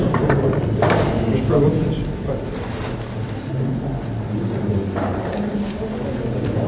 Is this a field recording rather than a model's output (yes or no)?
yes